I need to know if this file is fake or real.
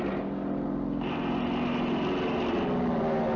real